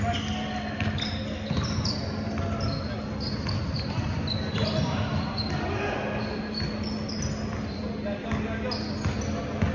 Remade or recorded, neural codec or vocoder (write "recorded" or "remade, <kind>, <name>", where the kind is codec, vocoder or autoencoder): recorded